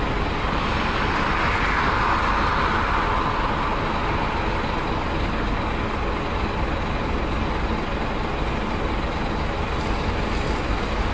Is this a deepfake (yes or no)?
no